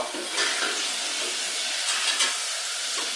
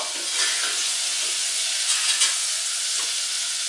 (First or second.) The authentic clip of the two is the first